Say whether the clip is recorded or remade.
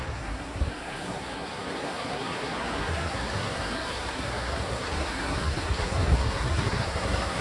remade